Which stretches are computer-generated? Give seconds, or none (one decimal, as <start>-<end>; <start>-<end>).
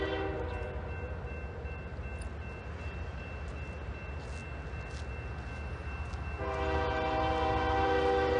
none